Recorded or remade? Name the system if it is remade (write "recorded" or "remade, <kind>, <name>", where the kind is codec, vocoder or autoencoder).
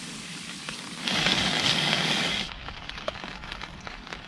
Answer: remade, codec, DAC